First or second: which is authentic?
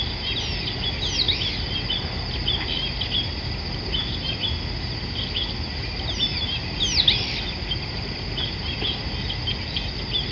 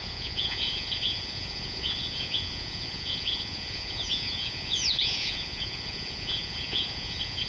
first